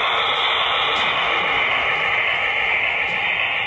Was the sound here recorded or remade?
recorded